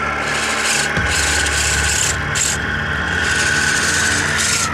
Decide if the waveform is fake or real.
real